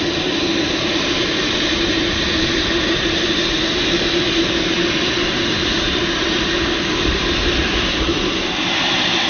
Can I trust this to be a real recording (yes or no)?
no